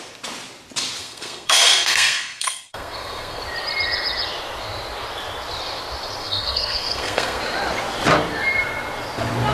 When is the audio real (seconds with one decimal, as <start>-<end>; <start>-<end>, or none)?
0.0-1.0; 3.4-6.2; 7.4-9.5